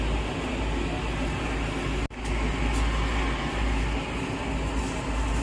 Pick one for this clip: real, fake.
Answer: real